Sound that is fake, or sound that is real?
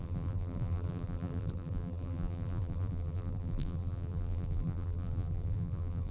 fake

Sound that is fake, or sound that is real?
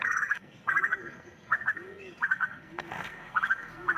fake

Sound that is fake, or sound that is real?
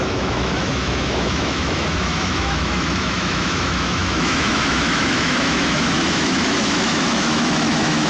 fake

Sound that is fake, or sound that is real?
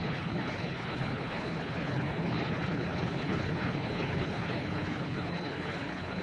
fake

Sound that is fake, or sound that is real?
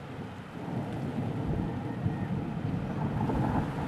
real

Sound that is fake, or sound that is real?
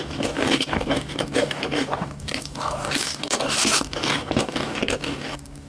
fake